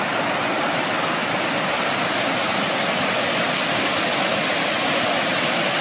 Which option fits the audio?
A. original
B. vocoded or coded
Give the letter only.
A